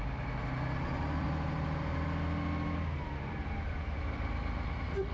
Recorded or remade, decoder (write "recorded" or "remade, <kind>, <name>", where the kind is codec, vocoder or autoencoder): recorded